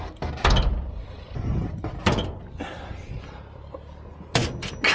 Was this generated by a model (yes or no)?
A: no